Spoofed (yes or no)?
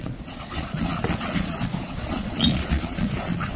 yes